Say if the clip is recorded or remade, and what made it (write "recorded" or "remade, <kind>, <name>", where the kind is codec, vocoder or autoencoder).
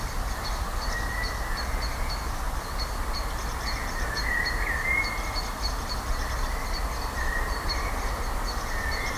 recorded